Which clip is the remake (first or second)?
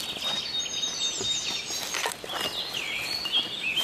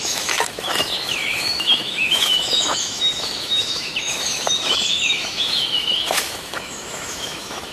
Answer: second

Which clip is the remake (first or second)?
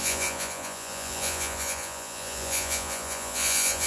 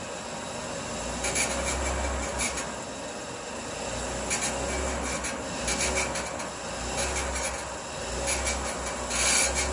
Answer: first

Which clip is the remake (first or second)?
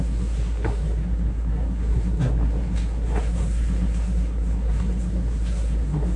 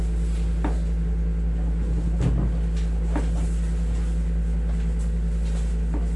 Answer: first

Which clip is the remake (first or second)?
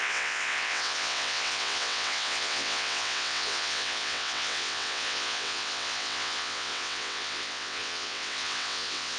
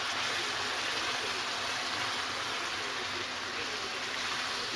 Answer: first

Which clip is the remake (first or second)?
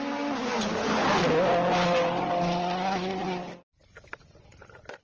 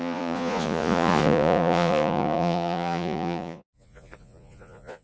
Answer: second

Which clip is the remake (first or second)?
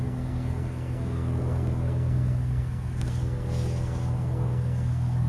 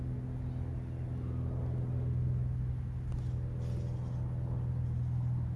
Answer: first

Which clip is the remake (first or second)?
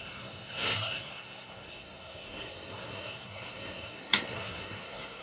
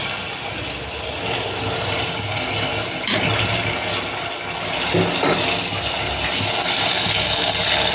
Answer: first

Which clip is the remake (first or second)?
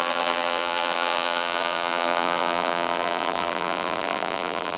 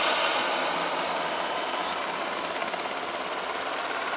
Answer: first